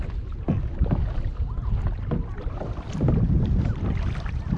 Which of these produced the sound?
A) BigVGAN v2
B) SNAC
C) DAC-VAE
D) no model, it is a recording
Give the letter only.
D